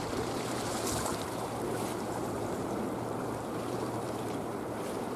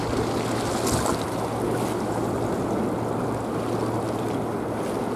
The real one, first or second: second